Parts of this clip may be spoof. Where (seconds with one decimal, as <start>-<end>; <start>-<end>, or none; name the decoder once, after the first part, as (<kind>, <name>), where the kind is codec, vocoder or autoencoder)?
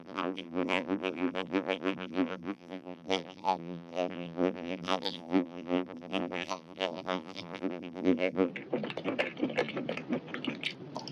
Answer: 0.0-8.5 (vocoder, BigVGAN v2)